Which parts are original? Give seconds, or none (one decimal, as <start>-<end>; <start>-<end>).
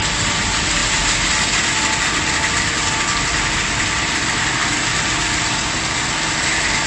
0.0-6.9